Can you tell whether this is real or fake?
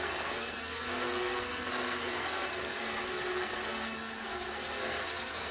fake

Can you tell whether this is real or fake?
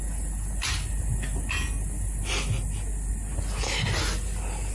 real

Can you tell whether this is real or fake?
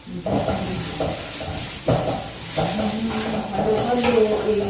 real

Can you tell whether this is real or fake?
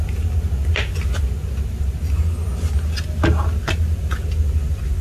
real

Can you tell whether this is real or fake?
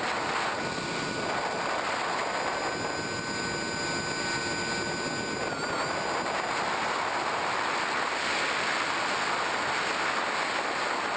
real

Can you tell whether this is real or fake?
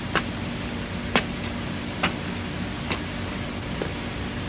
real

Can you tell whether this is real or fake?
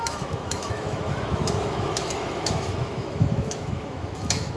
fake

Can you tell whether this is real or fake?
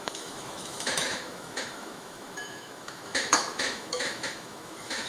fake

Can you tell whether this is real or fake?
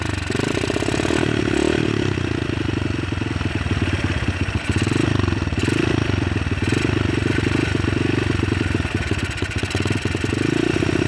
real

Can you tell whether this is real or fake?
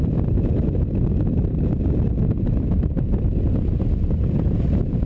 real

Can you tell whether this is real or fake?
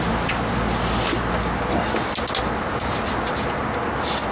real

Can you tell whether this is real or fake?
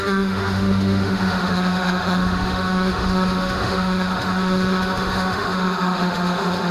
fake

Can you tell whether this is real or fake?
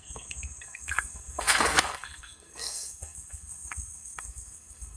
fake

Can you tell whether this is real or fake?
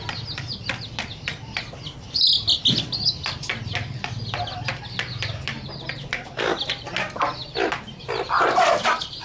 real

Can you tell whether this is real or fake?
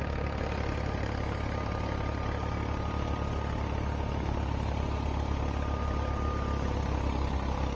real